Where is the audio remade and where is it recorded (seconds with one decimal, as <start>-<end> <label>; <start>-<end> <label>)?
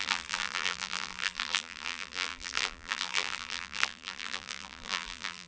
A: 0.0-5.5 remade